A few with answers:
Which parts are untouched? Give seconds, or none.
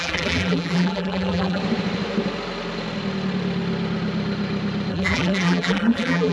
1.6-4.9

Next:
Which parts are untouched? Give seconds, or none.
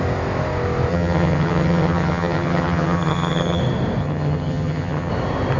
0.0-0.9; 3.6-4.0; 5.1-5.6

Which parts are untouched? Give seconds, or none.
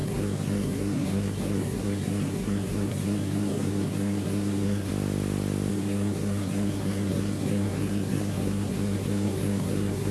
4.9-5.7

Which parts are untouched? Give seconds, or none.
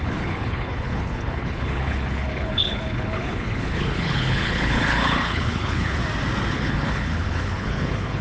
6.0-6.5